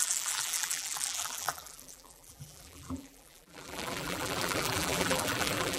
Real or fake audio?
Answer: fake